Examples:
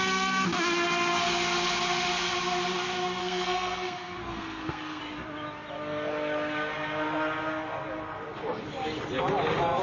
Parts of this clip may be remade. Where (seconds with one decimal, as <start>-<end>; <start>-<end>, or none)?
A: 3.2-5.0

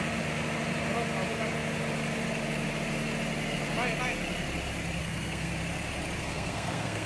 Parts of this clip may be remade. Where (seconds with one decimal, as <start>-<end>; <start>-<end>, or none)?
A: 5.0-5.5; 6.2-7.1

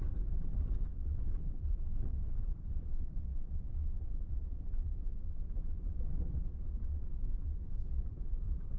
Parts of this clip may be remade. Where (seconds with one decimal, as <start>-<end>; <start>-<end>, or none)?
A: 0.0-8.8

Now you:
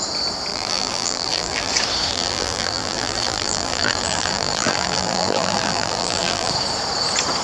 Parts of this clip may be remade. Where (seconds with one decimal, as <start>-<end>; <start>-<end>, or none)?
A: 0.5-1.7; 2.1-6.5